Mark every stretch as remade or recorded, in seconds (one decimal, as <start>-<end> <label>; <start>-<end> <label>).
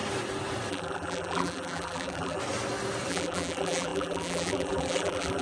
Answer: 0.0-0.7 recorded; 0.7-2.4 remade; 2.4-3.1 recorded; 3.1-5.4 remade